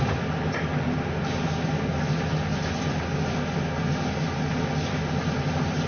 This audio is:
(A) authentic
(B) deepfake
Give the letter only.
A